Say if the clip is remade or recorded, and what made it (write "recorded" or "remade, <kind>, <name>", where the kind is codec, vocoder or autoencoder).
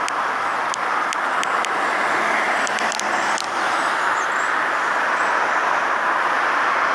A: recorded